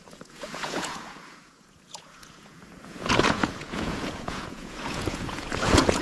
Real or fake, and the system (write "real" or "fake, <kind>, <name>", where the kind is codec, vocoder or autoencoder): fake, vocoder, Vocos